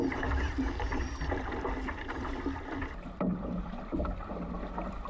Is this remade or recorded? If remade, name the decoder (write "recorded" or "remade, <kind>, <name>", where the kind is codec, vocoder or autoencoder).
remade, vocoder, BigVGAN v2